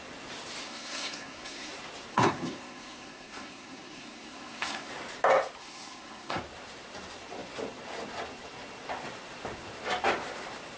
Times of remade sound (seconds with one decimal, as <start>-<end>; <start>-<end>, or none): 0.6-1.7; 2.1-4.9; 5.6-6.4

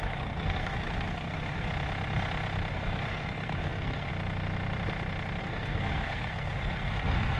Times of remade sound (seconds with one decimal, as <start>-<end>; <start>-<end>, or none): 0.0-1.7; 2.7-4.1; 5.4-7.4

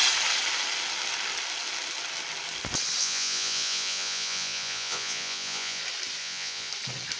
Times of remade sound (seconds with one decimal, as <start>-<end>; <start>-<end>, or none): 3.0-5.8; 6.2-6.7

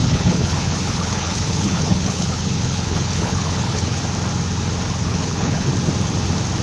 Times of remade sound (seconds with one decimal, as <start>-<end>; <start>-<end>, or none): 0.0-4.0; 5.0-5.7

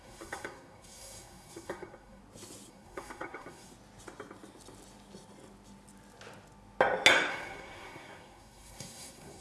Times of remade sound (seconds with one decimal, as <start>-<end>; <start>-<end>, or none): 0.0-2.2; 2.7-3.7; 7.3-9.4

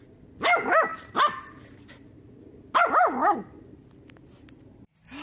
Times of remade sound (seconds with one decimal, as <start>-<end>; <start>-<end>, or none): none

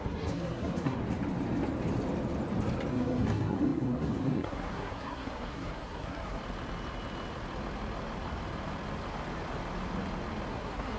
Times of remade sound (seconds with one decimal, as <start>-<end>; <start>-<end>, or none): 0.0-1.0; 2.9-6.4; 10.5-11.0